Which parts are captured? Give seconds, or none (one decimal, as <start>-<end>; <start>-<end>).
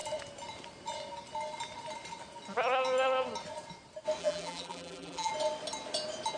0.0-4.2; 5.3-6.4